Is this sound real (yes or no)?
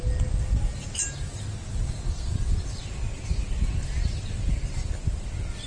yes